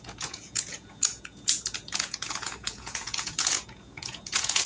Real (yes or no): no